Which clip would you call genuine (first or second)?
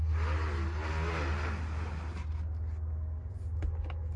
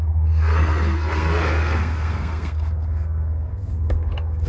first